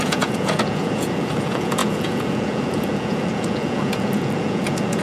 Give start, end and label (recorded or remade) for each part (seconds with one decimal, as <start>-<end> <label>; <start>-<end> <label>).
0.0-5.0 remade